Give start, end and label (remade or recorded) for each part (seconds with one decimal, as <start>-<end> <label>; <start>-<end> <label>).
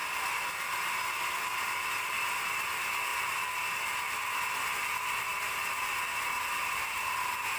0.0-7.6 recorded